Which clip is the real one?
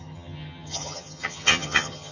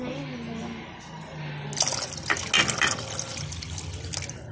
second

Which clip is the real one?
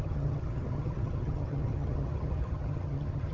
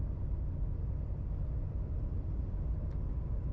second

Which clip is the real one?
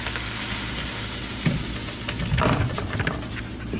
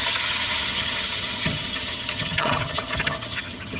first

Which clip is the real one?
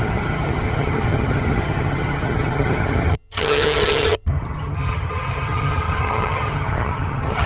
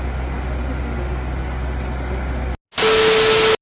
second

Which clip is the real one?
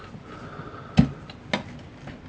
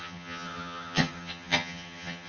first